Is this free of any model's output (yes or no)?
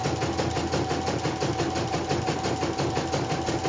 yes